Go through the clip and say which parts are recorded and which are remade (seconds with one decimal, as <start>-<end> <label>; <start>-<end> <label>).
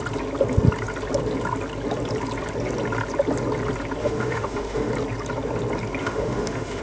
0.0-4.0 recorded; 4.0-4.9 remade; 4.9-6.0 recorded; 6.0-6.8 remade